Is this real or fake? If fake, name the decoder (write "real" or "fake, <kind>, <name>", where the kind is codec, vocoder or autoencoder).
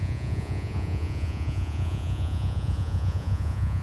fake, vocoder, Vocos